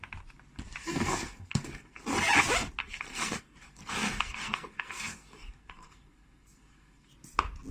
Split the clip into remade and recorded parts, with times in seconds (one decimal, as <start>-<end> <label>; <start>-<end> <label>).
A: 0.0-0.8 recorded; 0.8-2.0 remade; 2.0-2.8 recorded; 2.8-7.1 remade; 7.1-7.7 recorded